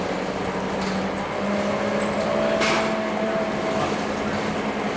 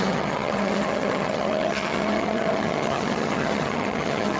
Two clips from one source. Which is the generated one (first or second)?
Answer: second